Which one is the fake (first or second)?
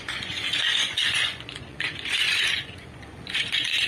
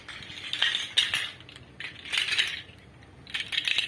first